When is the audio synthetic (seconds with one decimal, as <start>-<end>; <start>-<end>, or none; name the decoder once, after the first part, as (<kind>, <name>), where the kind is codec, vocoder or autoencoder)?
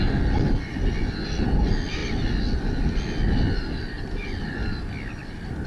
none